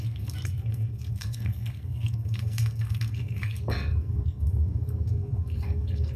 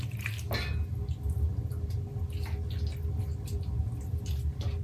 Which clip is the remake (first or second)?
first